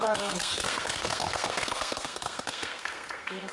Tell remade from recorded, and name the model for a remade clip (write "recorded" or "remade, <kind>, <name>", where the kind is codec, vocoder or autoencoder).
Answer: remade, codec, SNAC